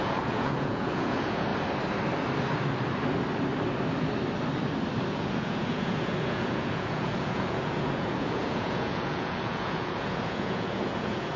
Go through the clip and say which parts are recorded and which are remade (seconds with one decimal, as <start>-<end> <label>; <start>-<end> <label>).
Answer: 0.0-1.5 remade; 1.5-5.1 recorded; 5.1-11.4 remade